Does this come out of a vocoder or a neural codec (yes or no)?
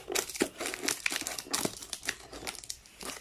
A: no